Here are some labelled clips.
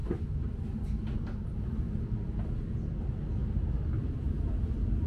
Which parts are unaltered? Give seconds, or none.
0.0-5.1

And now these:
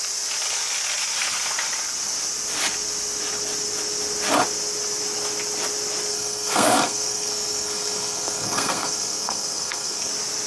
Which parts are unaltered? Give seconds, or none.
0.0-6.1; 10.1-10.5